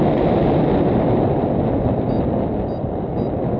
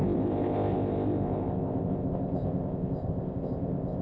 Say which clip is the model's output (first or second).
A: second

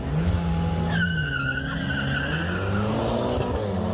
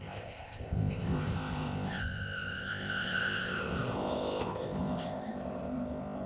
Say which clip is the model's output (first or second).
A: second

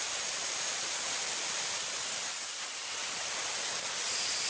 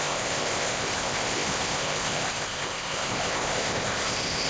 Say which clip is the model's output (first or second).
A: second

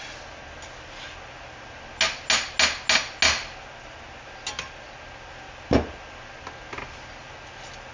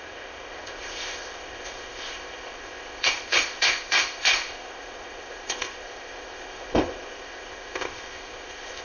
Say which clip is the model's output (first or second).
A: second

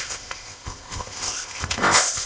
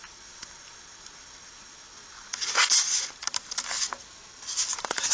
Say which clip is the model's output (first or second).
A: first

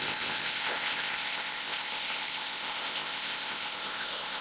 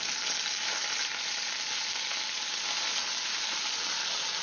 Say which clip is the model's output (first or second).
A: first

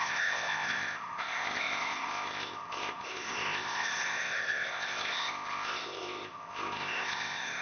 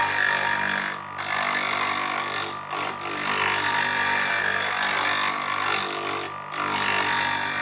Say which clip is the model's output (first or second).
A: first